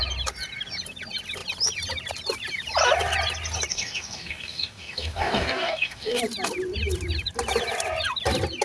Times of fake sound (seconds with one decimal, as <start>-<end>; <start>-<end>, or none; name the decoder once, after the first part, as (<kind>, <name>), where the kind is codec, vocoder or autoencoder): 3.7-6.2 (codec, DAC)